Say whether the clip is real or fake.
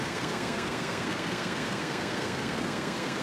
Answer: fake